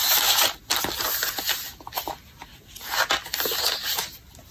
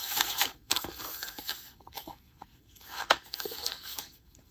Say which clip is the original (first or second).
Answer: first